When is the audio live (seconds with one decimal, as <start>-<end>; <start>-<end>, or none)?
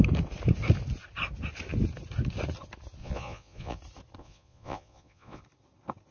0.0-3.0; 3.8-4.2; 5.4-6.1